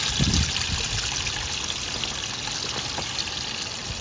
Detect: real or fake real